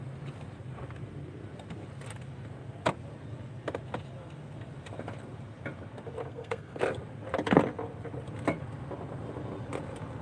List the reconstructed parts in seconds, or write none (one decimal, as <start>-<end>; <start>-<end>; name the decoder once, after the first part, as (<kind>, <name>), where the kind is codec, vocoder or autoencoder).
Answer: 6.3-6.8 (codec, SNAC)

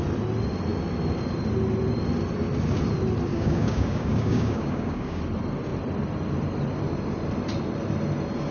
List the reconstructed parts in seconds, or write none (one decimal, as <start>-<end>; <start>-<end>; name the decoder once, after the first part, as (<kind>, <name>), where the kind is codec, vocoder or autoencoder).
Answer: 3.3-5.2 (codec, DAC)

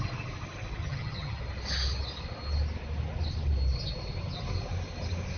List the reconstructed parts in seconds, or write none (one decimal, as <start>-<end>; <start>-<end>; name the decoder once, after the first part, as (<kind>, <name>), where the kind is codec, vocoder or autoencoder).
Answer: 0.8-1.4 (vocoder, HiFi-GAN)

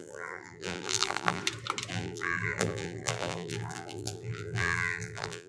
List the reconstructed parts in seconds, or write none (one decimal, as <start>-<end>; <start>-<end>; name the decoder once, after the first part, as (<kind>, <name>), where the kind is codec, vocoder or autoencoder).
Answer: 0.0-1.4 (vocoder, BigVGAN v2); 1.9-5.5

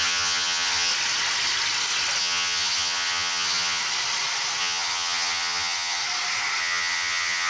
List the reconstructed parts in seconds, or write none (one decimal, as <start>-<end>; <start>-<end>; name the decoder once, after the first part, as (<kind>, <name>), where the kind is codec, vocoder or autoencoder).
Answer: 0.0-0.9 (vocoder, HiFi-GAN); 2.2-3.8; 4.6-6.0; 6.6-7.5

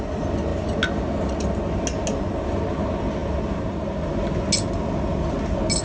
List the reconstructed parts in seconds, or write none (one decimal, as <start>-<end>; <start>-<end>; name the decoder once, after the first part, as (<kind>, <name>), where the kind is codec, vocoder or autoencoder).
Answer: none